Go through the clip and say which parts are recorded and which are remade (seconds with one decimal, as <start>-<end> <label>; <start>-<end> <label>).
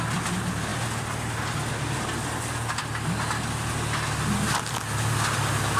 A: 0.0-5.8 recorded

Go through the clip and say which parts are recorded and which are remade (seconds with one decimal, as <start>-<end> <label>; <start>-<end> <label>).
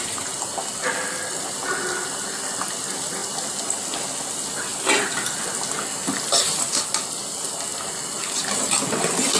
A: 0.0-9.4 recorded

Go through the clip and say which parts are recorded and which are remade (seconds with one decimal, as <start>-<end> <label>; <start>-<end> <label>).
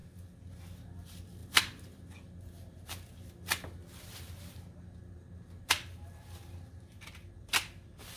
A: 0.0-8.2 recorded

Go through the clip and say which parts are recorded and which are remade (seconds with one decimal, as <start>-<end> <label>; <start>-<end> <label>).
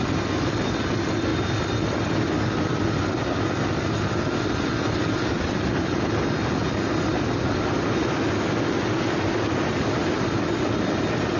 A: 0.0-1.3 recorded; 1.3-3.1 remade; 3.1-11.4 recorded